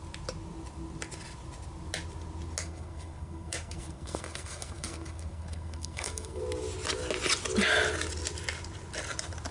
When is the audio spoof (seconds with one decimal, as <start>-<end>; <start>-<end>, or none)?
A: 2.6-6.4